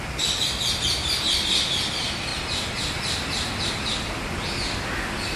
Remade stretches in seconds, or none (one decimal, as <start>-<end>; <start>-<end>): 0.0-2.3; 3.7-5.4